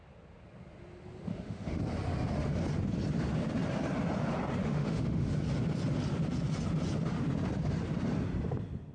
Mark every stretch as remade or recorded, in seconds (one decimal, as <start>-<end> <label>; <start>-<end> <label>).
0.0-1.3 recorded; 1.3-1.8 remade; 1.8-4.6 recorded; 4.6-5.3 remade; 5.3-8.9 recorded